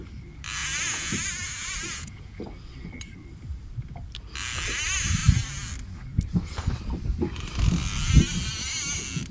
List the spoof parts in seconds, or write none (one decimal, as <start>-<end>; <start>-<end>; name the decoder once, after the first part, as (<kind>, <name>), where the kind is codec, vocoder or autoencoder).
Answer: 0.6-2.4 (vocoder, Vocos)